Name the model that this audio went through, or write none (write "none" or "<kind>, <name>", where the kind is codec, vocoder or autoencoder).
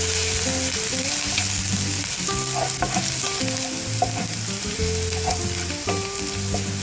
none